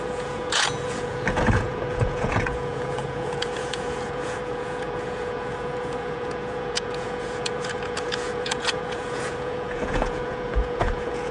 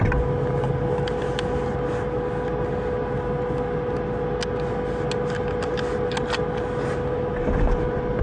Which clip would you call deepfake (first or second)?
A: first